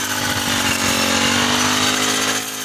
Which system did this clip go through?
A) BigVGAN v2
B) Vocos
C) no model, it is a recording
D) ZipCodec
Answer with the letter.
C